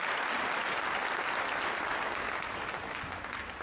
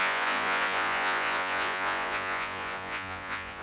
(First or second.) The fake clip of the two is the second